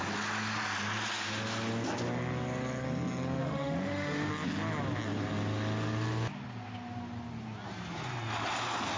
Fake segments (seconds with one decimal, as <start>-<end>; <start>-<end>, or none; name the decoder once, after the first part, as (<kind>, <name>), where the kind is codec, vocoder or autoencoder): 3.4-4.3 (autoencoder, DAC-VAE)